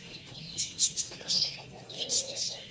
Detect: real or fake fake